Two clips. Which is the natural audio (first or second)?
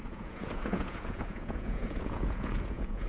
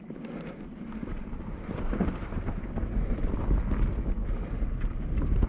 second